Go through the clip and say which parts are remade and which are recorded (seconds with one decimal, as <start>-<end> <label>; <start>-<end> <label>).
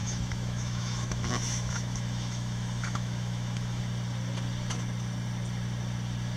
0.0-3.8 remade; 3.8-6.4 recorded